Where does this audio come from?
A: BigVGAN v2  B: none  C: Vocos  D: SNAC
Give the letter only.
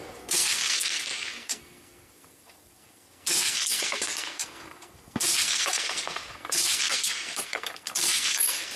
D